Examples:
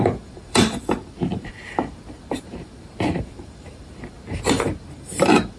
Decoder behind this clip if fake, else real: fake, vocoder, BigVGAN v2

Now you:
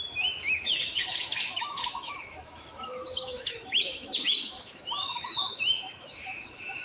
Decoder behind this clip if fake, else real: fake, autoencoder, DAC-VAE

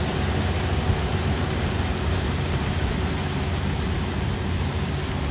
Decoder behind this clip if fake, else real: real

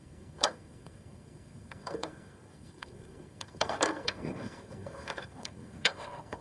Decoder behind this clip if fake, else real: fake, codec, SNAC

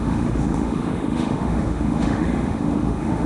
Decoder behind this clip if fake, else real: fake, autoencoder, DAC-VAE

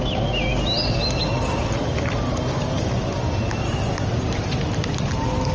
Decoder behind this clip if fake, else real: real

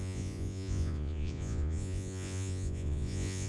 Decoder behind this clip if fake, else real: fake, vocoder, Vocos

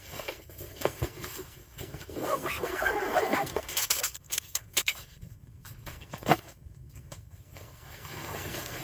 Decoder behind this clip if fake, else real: fake, codec, SNAC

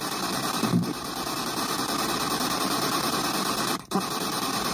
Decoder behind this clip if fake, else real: fake, vocoder, BigVGAN v2